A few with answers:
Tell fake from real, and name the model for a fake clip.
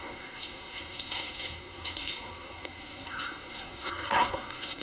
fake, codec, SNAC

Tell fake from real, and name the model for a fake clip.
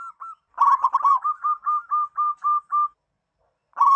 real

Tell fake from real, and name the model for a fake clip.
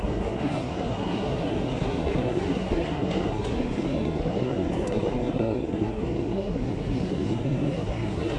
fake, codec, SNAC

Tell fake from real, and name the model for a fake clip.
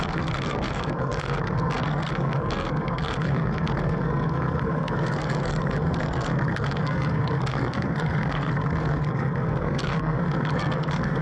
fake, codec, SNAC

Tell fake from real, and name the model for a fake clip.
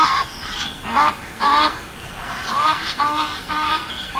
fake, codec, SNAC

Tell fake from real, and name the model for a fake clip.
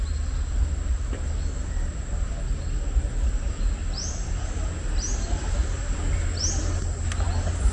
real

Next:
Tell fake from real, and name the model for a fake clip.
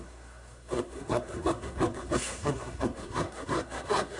fake, codec, SNAC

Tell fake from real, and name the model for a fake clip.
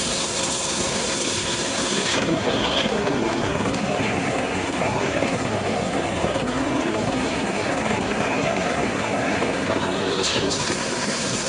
fake, codec, SNAC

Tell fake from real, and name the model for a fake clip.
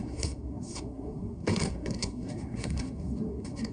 fake, codec, SNAC